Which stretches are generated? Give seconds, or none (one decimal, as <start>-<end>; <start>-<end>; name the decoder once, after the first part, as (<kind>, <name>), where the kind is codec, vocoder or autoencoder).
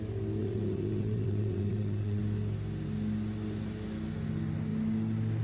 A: 0.4-2.2 (vocoder, WaveNeXt)